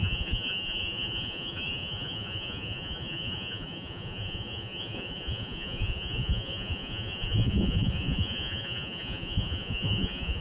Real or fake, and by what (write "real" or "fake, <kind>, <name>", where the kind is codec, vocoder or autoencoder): fake, vocoder, Vocos